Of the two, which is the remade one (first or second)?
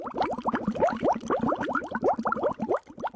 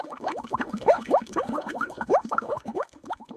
second